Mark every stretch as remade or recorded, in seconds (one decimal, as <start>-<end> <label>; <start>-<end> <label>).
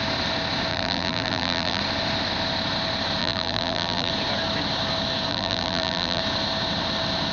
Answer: 0.0-0.7 recorded; 0.7-1.8 remade; 1.8-3.2 recorded; 3.2-4.1 remade; 4.1-5.3 recorded; 5.3-6.2 remade; 6.2-7.3 recorded